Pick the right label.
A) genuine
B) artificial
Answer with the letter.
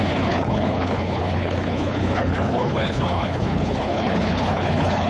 B